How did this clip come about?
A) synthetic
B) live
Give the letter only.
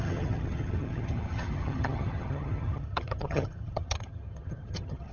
A